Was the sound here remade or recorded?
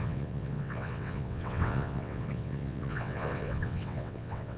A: remade